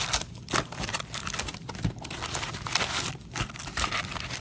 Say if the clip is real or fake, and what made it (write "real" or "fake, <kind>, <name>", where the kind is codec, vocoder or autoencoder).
real